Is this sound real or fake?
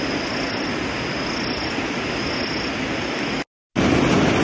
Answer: real